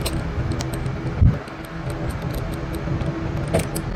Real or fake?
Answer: real